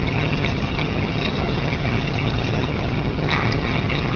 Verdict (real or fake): fake